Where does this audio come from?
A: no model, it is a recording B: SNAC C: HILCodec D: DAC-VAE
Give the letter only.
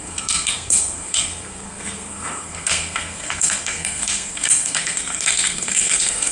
B